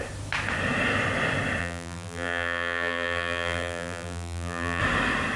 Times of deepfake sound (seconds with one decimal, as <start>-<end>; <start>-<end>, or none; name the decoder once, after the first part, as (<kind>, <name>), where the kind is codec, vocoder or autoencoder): 1.6-4.8 (vocoder, BigVGAN v2)